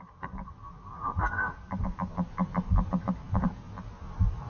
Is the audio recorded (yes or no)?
no